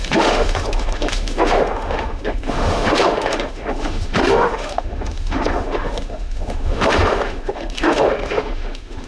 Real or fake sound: fake